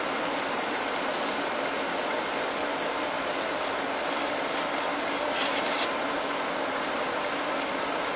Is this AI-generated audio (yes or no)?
no